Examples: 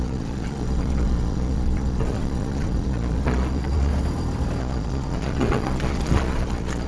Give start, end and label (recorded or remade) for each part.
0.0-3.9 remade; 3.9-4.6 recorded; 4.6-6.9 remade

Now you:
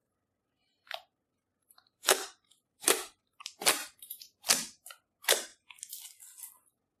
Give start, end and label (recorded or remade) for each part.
0.0-3.4 remade; 3.4-3.8 recorded; 3.8-4.5 remade; 4.5-7.0 recorded